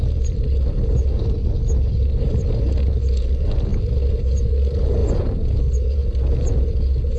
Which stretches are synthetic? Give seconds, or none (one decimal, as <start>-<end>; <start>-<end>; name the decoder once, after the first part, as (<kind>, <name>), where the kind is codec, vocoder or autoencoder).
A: 5.0-5.6 (vocoder, Vocos)